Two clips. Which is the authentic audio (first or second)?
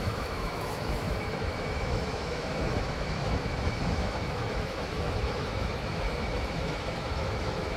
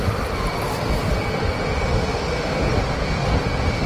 second